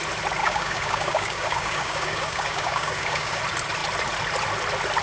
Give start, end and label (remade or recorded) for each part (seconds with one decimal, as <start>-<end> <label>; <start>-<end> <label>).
0.0-0.4 recorded; 0.4-3.4 remade; 3.4-5.0 recorded

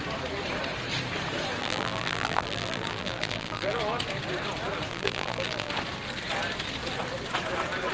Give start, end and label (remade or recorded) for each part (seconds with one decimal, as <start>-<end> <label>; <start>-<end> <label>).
0.0-1.6 recorded; 1.6-3.8 remade; 3.8-4.9 recorded; 4.9-5.7 remade; 5.7-7.9 recorded